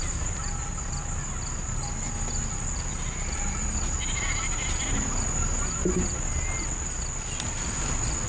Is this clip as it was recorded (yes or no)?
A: yes